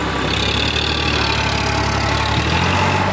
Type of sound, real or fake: real